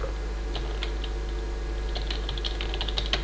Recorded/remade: recorded